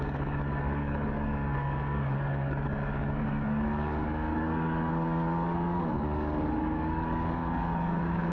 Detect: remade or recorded remade